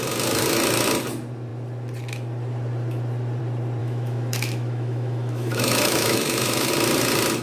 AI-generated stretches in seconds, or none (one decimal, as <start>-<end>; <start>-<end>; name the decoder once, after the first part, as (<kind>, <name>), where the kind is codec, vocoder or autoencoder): 3.8-6.7 (autoencoder, DAC-VAE)

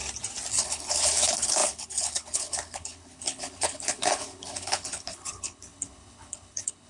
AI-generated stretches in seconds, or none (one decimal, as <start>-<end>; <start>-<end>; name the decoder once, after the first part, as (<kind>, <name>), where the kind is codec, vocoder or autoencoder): 0.5-6.9 (codec, HILCodec)

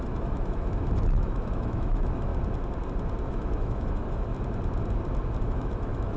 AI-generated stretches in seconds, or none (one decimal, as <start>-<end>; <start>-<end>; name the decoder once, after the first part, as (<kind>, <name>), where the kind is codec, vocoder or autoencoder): 0.0-2.3 (autoencoder, DAC-VAE); 3.3-4.3; 5.4-6.2

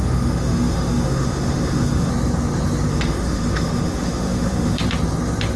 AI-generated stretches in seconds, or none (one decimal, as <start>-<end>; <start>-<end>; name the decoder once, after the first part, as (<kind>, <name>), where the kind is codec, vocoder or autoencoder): 0.0-2.1 (autoencoder, DAC-VAE); 2.9-4.8

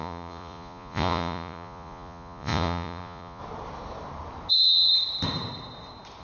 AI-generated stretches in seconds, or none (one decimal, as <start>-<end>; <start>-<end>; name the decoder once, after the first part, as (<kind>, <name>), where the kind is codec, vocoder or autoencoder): 0.0-3.4 (vocoder, Vocos); 4.5-4.9

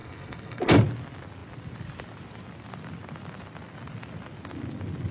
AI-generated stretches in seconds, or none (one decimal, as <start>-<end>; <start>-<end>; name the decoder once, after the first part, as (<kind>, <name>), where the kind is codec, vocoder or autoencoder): 0.0-0.6 (codec, SNAC)

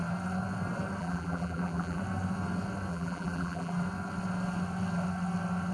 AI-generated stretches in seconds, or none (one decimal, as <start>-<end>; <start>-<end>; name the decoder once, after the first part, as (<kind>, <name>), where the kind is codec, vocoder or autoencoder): 1.0-2.0 (vocoder, BigVGAN v2); 2.9-3.7

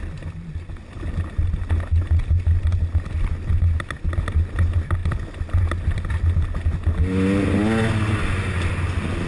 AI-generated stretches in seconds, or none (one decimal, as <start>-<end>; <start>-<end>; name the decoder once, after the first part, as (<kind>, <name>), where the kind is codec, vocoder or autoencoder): none